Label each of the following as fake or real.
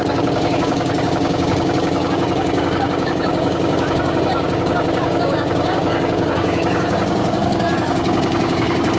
fake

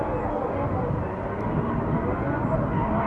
real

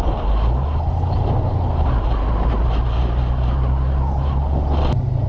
real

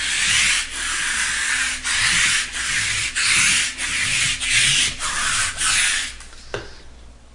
real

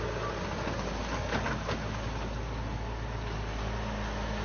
real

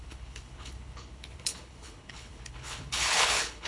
fake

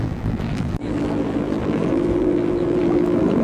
fake